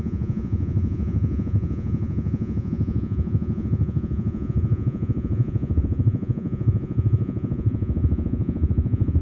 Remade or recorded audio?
remade